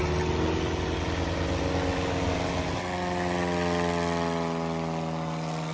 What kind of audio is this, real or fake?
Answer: real